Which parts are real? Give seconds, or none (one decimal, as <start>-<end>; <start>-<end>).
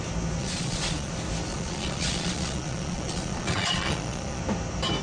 0.0-0.4; 1.1-1.5; 4.4-5.0